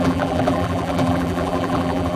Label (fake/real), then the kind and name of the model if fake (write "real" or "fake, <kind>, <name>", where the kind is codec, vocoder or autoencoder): fake, vocoder, BigVGAN v2